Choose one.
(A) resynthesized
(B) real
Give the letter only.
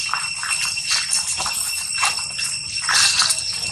B